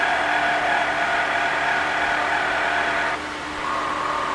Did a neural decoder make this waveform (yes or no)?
no